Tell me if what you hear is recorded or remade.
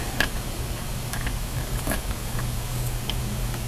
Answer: remade